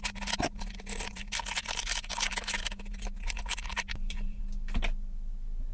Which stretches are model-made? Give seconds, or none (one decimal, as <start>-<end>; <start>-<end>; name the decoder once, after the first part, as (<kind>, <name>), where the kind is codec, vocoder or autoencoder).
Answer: 3.7-4.4 (vocoder, BigVGAN v2)